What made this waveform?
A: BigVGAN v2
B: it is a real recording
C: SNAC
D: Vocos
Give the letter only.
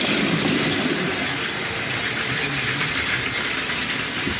B